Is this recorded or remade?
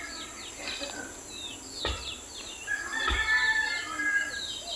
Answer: recorded